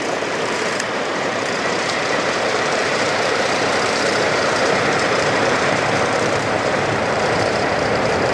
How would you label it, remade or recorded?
remade